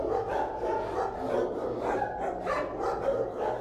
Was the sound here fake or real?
real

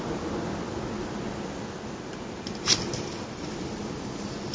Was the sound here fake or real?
real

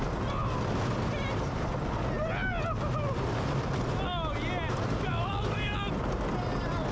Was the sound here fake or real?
real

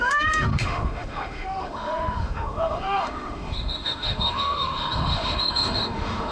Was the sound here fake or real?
fake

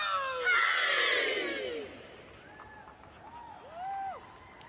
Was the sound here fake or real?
real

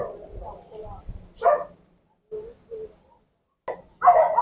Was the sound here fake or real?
real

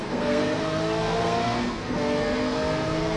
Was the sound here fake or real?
fake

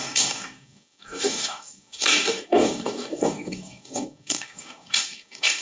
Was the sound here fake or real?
fake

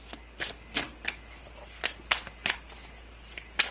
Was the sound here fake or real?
real